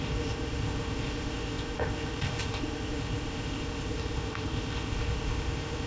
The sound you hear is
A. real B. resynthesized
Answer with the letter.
B